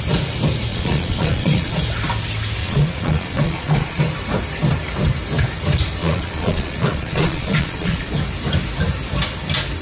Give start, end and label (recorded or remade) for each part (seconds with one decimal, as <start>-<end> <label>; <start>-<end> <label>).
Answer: 0.0-0.7 recorded; 0.7-1.7 remade; 1.7-2.6 recorded; 2.6-4.0 remade; 4.0-6.0 recorded; 6.0-8.1 remade; 8.1-9.8 recorded

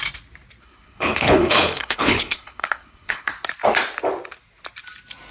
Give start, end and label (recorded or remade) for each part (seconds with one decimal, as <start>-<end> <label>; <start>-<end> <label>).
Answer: 0.0-0.6 recorded; 0.6-3.3 remade; 3.3-5.3 recorded

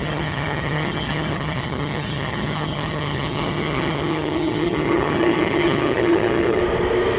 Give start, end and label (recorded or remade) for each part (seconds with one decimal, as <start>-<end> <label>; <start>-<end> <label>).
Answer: 0.0-6.6 remade; 6.6-7.2 recorded

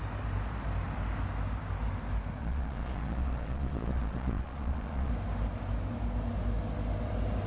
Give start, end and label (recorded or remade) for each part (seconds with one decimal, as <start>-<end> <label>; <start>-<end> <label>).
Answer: 0.0-2.4 recorded; 2.4-5.1 remade; 5.1-7.5 recorded

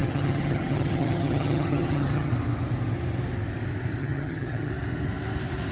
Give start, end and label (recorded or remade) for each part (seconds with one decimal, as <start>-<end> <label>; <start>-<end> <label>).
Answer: 0.0-2.3 remade; 2.3-4.0 recorded; 4.0-4.7 remade; 4.7-5.7 recorded

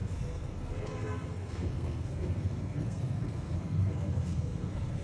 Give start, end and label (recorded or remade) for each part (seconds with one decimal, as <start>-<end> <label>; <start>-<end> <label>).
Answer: 0.0-5.0 remade